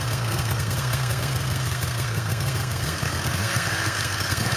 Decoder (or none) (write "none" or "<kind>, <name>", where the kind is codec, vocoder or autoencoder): codec, SNAC